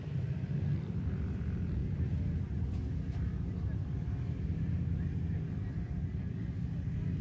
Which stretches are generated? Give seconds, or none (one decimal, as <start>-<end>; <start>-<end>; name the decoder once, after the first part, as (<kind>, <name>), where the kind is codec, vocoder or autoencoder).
none